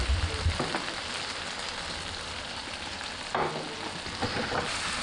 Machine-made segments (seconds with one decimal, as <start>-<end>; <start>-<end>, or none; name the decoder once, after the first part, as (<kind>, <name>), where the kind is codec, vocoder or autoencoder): none